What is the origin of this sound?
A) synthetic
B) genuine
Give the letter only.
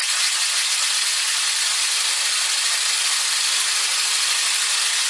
B